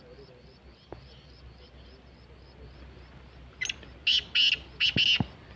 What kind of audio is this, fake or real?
real